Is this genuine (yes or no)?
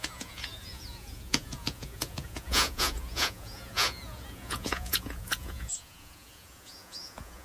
no